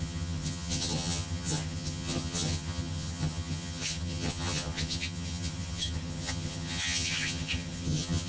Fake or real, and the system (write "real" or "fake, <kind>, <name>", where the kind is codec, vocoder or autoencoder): fake, vocoder, HiFi-GAN